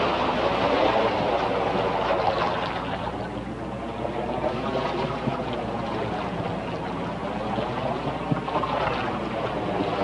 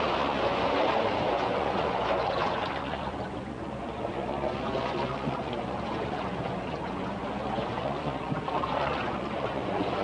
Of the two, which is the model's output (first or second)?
second